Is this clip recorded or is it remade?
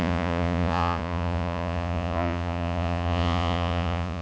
remade